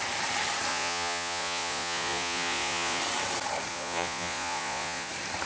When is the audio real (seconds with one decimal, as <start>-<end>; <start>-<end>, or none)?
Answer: 0.0-0.7; 3.0-3.7; 5.1-5.5